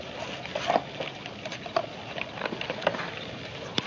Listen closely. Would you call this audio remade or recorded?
recorded